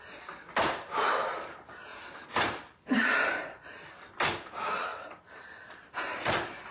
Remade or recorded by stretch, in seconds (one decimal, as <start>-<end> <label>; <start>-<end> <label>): 0.0-1.9 recorded; 1.9-3.9 remade; 3.9-4.9 recorded; 4.9-5.9 remade; 5.9-6.7 recorded